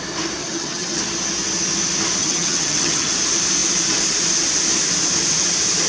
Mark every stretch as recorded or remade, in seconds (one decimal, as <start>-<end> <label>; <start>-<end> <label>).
0.0-0.4 recorded; 0.4-1.0 remade; 1.0-2.2 recorded; 2.2-3.1 remade; 3.1-5.9 recorded